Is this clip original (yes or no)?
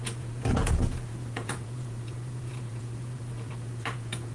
no